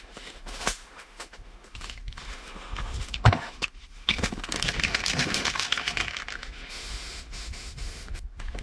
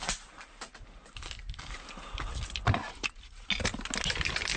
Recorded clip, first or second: second